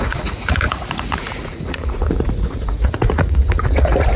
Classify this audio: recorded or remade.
remade